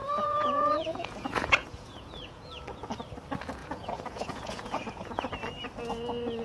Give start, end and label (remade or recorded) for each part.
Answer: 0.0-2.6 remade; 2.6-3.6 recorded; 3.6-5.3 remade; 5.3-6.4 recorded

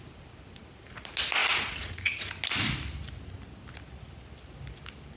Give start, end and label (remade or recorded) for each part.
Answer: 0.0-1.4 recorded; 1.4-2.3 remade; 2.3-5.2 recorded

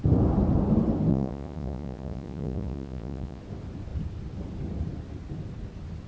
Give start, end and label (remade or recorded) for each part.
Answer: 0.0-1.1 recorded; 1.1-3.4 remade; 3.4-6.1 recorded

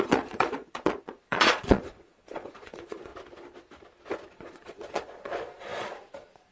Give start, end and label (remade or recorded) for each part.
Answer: 0.0-3.1 remade; 3.1-4.3 recorded; 4.3-6.5 remade